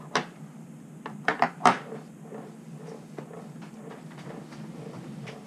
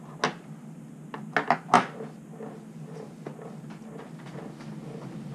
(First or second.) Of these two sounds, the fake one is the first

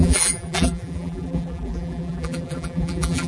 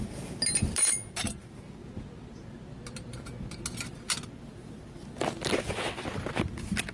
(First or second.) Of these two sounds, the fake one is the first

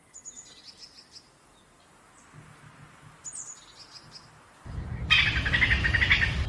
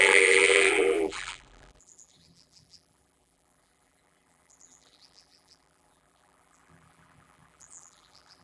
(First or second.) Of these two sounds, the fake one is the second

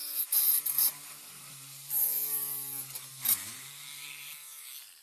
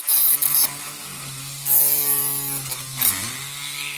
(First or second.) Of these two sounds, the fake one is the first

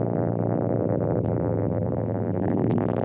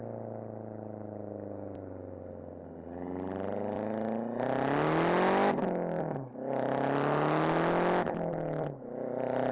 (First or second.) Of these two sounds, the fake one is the first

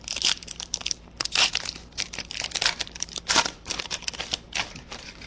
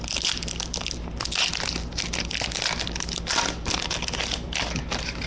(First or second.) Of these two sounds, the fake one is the first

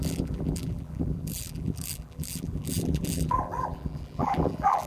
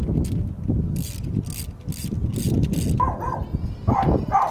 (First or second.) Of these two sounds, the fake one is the first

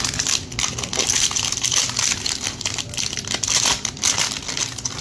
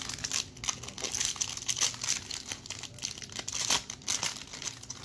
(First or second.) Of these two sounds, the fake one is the first